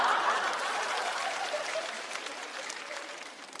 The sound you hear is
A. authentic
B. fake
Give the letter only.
B